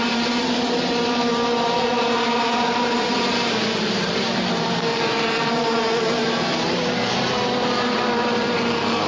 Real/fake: fake